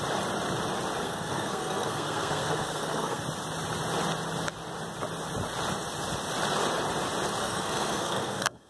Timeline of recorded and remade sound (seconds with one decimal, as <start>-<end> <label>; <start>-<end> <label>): 0.0-1.0 recorded; 1.0-3.2 remade; 3.2-7.4 recorded; 7.4-8.7 remade